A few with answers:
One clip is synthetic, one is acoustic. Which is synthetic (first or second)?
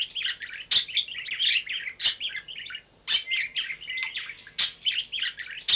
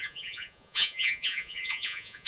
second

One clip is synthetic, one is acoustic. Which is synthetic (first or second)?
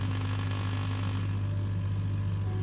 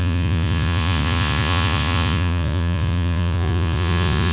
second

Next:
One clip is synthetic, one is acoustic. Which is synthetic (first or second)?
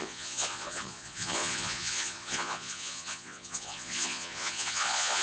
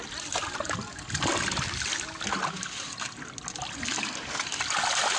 first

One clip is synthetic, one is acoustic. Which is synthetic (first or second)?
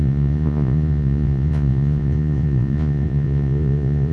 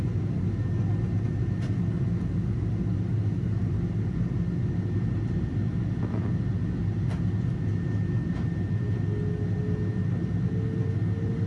first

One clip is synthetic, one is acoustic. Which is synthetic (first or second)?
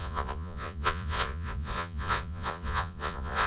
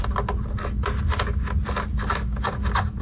first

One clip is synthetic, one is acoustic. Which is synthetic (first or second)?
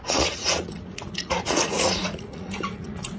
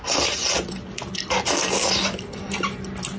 first